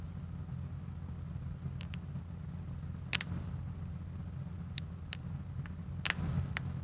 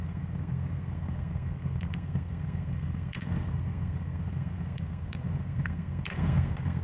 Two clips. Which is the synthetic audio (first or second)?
second